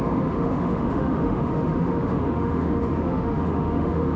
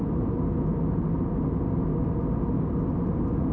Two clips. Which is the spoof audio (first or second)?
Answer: first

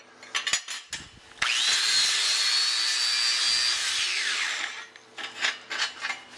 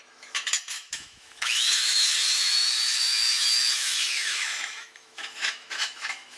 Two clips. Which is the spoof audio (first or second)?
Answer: second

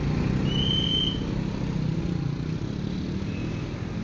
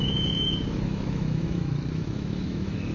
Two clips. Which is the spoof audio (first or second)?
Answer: second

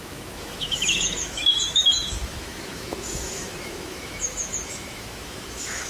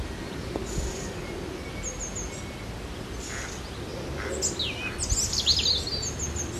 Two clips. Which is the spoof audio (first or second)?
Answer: first